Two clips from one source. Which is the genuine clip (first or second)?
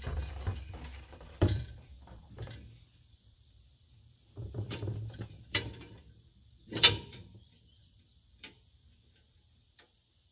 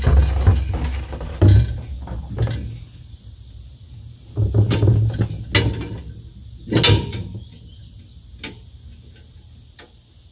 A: second